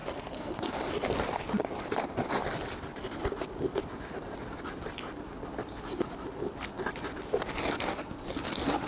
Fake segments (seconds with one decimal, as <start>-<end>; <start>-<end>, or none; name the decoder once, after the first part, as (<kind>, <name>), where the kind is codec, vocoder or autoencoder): 0.0-0.7 (codec, SNAC)